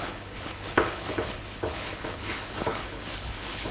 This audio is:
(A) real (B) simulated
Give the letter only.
B